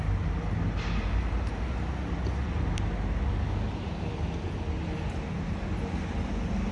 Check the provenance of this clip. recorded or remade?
recorded